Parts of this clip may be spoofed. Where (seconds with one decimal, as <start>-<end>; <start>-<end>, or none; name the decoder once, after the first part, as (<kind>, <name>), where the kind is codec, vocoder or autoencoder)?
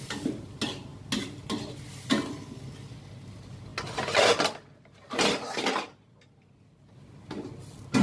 none